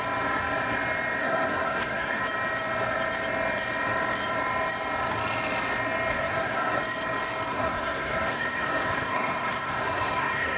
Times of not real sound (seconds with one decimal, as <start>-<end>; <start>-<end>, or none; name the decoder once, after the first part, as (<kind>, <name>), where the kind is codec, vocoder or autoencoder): 1.2-2.2 (codec, SNAC); 6.1-6.8; 7.5-10.6